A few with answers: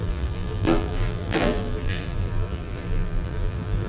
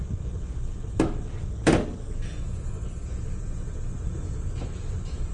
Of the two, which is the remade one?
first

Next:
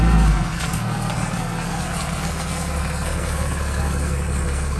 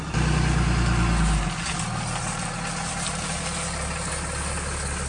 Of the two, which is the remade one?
first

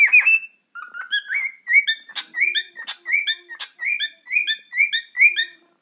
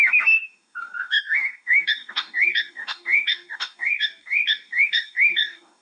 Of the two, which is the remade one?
second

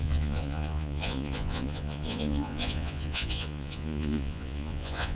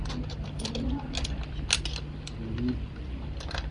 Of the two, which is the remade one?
first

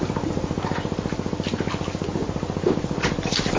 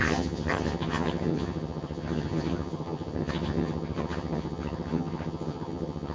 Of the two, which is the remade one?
second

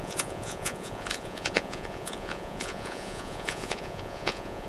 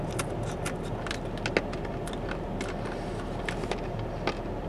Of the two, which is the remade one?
first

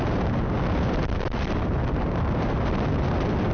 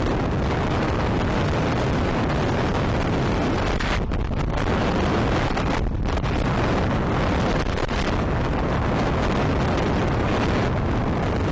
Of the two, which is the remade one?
first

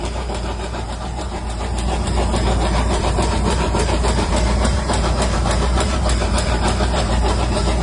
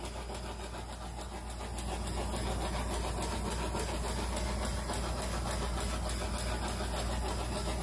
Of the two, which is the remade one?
first